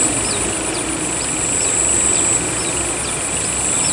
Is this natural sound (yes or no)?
yes